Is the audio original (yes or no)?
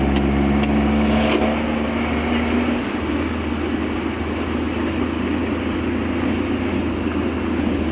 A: yes